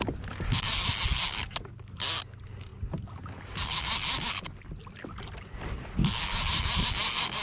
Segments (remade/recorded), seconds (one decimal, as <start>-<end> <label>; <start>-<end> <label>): 0.0-7.4 recorded